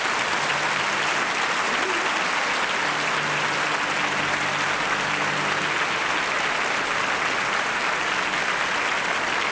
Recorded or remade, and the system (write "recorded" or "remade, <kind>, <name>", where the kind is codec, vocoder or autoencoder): recorded